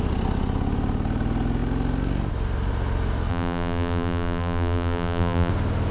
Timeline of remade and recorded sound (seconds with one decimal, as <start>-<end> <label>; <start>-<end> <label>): 0.0-3.3 recorded; 3.3-5.5 remade; 5.5-5.9 recorded